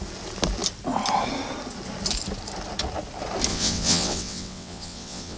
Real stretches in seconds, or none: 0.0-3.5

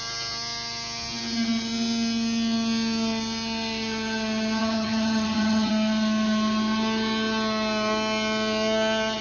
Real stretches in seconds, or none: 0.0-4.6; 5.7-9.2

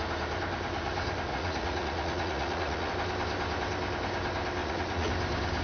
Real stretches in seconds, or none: 0.0-1.3; 2.9-4.6; 5.1-5.6